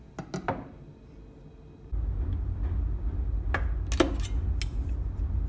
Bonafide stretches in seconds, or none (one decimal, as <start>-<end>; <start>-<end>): 0.0-5.5